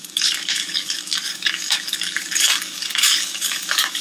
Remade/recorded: remade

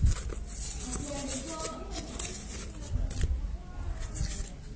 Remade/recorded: recorded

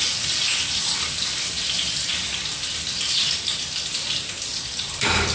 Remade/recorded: recorded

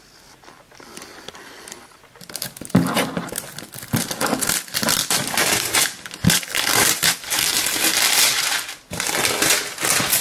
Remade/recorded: recorded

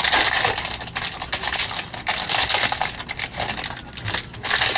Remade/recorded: recorded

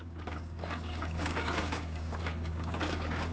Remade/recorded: remade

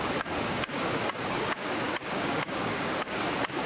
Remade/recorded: remade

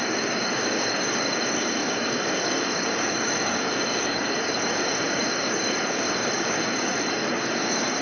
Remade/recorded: remade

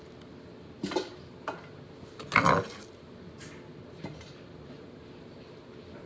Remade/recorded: recorded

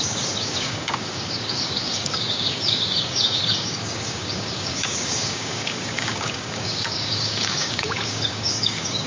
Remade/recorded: remade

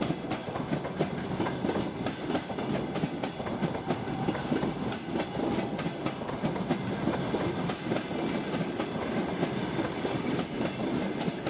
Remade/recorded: recorded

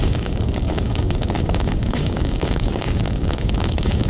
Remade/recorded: remade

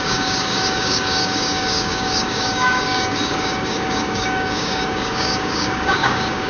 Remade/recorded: remade